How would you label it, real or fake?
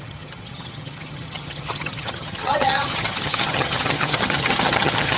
fake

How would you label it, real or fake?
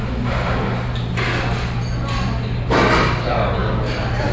real